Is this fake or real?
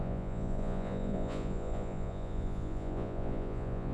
fake